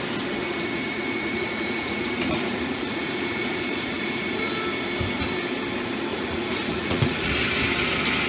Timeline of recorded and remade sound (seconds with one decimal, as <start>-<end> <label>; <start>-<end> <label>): 0.0-0.4 recorded; 0.4-4.5 remade; 4.5-6.1 recorded; 6.1-7.3 remade; 7.3-8.3 recorded